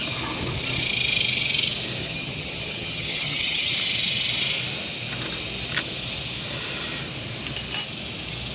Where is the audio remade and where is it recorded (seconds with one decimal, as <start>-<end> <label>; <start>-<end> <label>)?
0.0-2.0 recorded; 2.0-3.7 remade; 3.7-8.5 recorded